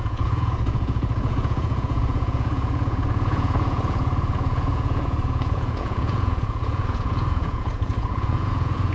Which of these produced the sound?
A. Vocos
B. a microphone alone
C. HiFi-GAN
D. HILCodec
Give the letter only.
A